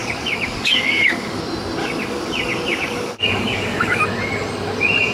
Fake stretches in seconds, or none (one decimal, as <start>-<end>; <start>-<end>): 0.0-1.4; 1.8-4.0